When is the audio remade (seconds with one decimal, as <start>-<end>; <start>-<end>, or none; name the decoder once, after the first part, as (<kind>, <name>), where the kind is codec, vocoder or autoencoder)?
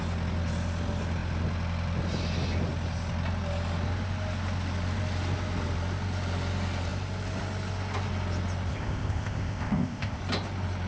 8.7-10.2 (codec, ZipCodec)